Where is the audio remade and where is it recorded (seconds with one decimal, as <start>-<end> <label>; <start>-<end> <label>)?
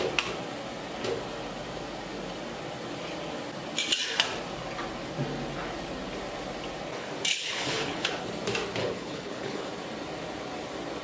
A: 0.0-7.3 recorded; 7.3-8.1 remade; 8.1-8.8 recorded; 8.8-9.7 remade; 9.7-11.0 recorded